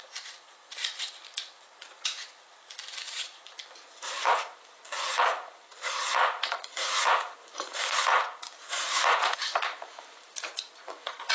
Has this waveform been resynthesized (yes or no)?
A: yes